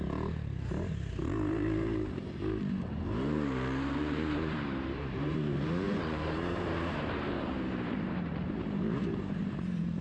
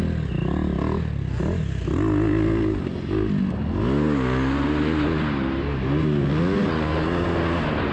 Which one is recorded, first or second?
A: second